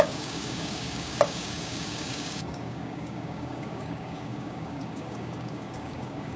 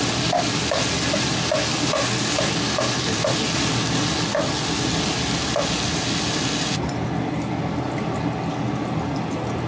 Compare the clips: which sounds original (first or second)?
second